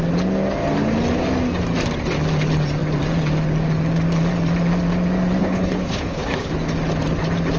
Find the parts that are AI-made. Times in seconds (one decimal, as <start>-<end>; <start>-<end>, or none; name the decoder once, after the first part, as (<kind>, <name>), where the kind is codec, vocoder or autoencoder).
5.4-6.5 (codec, HILCodec)

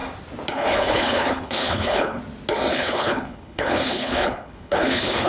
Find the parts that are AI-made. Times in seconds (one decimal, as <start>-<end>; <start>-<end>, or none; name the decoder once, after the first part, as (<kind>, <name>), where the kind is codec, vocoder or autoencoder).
0.5-2.2 (codec, HILCodec); 2.7-5.3

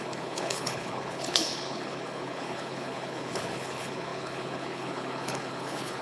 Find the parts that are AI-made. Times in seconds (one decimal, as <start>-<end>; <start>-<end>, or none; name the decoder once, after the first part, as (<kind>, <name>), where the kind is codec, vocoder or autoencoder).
0.0-6.0 (codec, HILCodec)

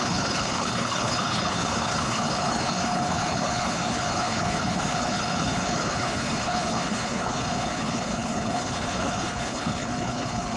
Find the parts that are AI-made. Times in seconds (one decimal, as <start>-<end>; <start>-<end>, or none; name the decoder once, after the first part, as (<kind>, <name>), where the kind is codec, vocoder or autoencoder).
0.0-10.6 (codec, HILCodec)

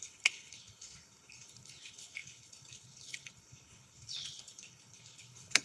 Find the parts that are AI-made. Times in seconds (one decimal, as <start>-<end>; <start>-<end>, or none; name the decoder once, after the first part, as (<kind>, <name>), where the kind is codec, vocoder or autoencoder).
0.0-5.6 (codec, HILCodec)